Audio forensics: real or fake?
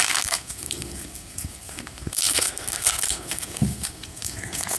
fake